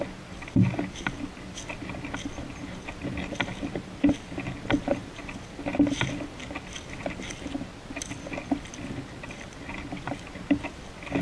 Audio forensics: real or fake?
real